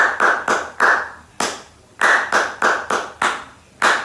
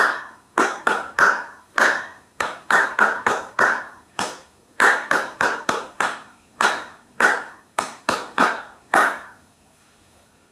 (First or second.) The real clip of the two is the first